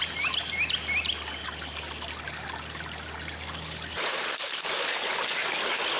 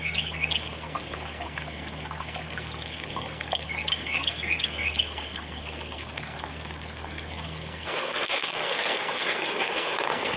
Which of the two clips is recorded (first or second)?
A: first